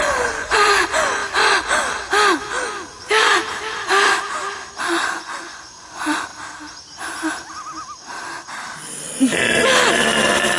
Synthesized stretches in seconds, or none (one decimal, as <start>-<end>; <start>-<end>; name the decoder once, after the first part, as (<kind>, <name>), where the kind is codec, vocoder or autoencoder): 0.0-1.2 (vocoder, Vocos); 4.8-6.3